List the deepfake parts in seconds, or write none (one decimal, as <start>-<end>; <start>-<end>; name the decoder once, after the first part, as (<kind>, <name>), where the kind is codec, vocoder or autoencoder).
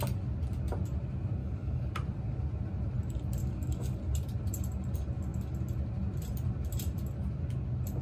1.4-1.9 (codec, DAC); 3.4-4.0